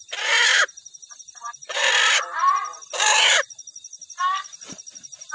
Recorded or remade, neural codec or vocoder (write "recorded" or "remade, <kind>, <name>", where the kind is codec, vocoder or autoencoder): recorded